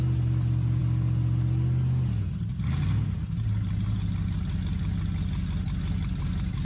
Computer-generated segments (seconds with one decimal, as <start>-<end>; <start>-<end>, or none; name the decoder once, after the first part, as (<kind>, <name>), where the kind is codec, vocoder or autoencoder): none